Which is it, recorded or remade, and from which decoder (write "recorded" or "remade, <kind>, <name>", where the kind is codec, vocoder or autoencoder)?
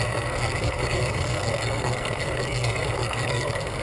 remade, codec, SNAC